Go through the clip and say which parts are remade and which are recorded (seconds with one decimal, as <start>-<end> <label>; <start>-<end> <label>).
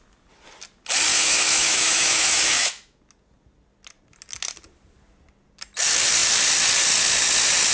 0.0-1.1 recorded; 1.1-3.0 remade; 3.0-7.7 recorded